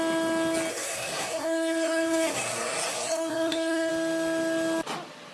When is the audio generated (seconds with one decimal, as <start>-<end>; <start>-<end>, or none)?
0.7-3.9